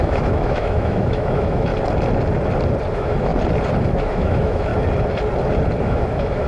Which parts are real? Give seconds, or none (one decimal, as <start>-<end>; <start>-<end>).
1.7-2.9; 3.3-4.0; 4.7-5.8